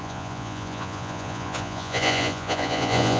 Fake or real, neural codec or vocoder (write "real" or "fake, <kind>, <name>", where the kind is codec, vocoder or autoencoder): fake, vocoder, Vocos